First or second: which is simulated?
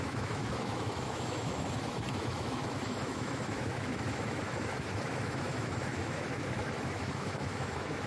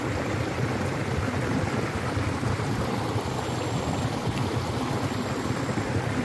first